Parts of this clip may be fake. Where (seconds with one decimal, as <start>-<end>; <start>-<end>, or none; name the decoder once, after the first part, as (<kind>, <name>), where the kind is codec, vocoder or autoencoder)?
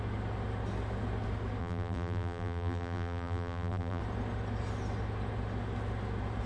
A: 1.6-4.0 (vocoder, BigVGAN v2)